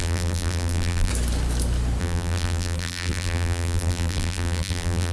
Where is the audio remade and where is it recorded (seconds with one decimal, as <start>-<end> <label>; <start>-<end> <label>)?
0.0-1.1 remade; 1.1-2.0 recorded; 2.0-5.1 remade